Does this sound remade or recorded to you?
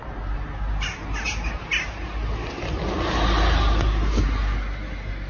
recorded